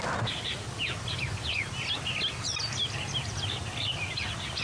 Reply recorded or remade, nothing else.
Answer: recorded